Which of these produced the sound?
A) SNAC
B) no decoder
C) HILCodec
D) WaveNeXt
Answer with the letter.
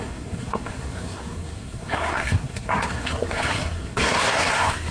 A